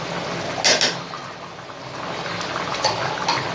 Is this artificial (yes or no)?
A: no